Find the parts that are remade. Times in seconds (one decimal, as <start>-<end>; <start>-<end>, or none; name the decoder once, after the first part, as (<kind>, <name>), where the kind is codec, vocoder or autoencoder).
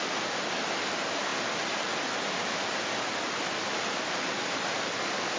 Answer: none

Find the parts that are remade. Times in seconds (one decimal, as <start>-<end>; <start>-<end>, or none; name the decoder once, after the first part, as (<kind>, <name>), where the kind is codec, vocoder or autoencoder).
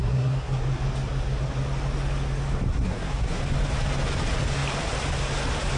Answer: 0.0-0.6 (codec, SNAC); 2.7-3.4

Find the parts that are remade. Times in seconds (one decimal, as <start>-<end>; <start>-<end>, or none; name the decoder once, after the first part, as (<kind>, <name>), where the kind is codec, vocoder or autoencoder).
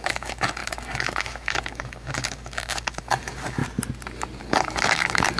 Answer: 0.0-3.6 (codec, DAC); 4.4-5.4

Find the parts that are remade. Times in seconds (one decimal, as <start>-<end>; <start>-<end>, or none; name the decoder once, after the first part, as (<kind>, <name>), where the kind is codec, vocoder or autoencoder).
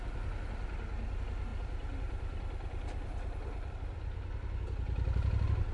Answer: 1.5-3.7 (vocoder, BigVGAN v2)